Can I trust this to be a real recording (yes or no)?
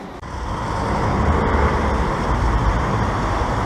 no